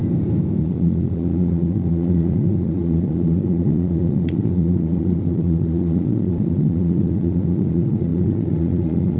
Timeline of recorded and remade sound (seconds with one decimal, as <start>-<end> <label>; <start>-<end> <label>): 0.0-0.6 recorded; 0.6-9.2 remade